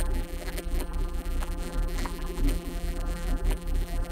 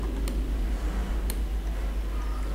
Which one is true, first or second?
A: second